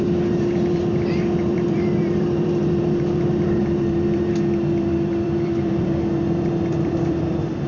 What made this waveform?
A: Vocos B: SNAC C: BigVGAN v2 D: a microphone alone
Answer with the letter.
C